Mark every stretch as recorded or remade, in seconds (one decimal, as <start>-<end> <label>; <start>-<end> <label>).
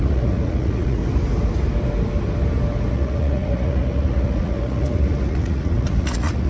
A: 0.0-1.0 remade; 1.0-2.9 recorded; 2.9-6.5 remade